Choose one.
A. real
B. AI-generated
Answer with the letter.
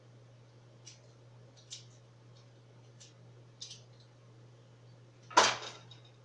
A